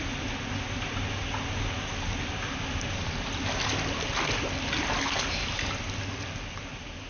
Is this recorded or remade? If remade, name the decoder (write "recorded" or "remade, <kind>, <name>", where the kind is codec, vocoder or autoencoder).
recorded